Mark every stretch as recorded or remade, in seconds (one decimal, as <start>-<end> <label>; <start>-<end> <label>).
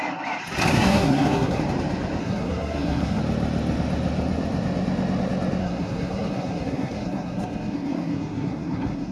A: 0.0-0.7 recorded; 0.7-1.6 remade; 1.6-2.2 recorded; 2.2-3.2 remade; 3.2-5.6 recorded; 5.6-9.1 remade